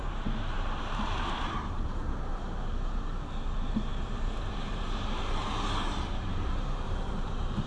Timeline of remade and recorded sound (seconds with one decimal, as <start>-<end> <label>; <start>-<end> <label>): 0.0-2.3 remade; 2.3-3.0 recorded; 3.0-7.7 remade